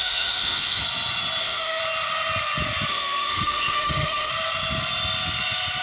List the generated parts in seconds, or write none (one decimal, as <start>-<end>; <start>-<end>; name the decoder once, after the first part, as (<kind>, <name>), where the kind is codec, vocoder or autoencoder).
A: 0.0-0.8 (autoencoder, DAC-VAE); 1.4-1.8; 2.9-4.3

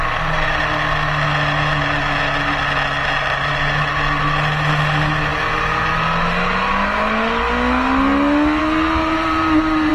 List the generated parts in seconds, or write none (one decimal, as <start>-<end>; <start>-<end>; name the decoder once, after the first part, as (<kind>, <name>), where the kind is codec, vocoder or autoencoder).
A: 9.0-9.9 (vocoder, BigVGAN v2)